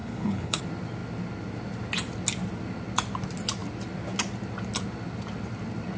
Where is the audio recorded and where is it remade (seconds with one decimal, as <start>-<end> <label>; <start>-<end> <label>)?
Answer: 0.0-0.6 remade; 0.6-6.0 recorded